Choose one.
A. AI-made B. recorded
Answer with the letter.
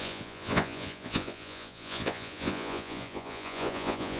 A